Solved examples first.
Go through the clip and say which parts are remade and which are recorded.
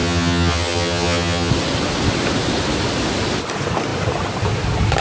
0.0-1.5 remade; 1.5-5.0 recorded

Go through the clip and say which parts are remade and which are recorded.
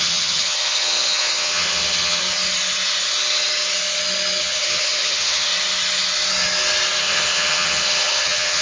0.0-2.2 remade; 2.2-4.4 recorded; 4.4-5.5 remade; 5.5-7.0 recorded; 7.0-8.6 remade